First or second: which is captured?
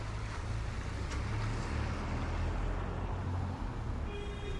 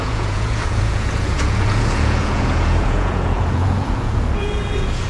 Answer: first